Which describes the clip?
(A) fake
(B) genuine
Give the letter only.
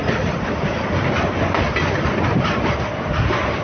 A